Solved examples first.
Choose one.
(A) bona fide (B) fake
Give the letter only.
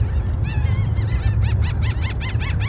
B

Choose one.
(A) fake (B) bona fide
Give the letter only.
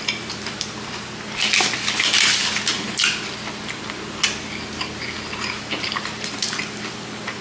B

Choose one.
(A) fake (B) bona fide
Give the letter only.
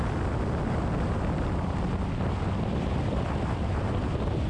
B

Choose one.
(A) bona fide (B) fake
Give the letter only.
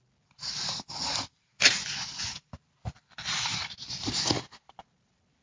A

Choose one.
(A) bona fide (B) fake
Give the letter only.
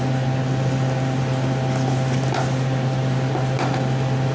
A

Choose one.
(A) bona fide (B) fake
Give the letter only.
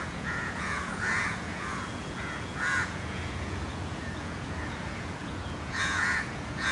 B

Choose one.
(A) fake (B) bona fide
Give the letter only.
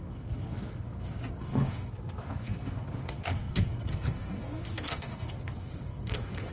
A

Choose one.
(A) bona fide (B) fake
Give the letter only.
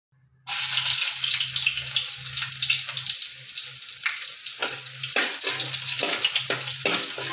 A